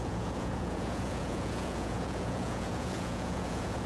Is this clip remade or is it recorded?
remade